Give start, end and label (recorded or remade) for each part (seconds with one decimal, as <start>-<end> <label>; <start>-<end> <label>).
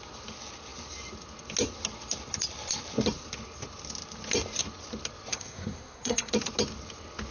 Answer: 0.0-5.3 recorded; 5.3-6.3 remade; 6.3-7.3 recorded